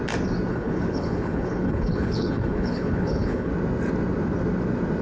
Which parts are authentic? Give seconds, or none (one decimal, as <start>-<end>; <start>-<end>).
0.0-0.5; 3.5-5.0